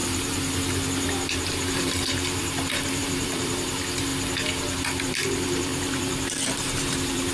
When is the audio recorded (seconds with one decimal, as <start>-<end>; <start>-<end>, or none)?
4.1-5.0